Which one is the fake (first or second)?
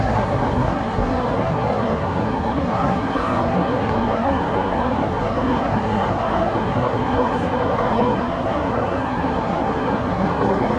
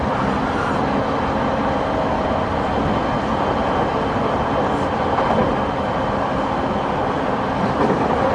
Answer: first